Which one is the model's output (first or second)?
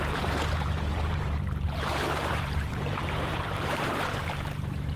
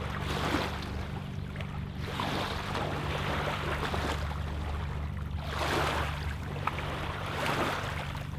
first